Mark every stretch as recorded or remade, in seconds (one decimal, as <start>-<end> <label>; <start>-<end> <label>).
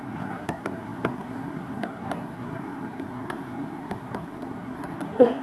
0.0-5.4 remade